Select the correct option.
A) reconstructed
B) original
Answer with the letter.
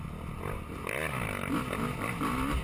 B